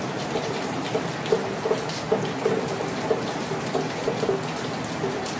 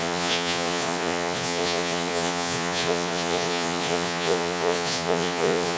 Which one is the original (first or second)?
first